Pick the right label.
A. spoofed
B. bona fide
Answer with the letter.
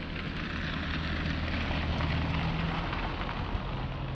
B